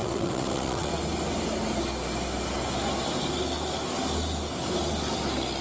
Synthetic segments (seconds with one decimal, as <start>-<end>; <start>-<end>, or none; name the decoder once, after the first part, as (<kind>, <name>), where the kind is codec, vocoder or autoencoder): 0.0-0.9 (vocoder, WaveNeXt)